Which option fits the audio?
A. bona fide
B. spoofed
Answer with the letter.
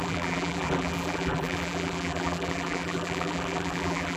B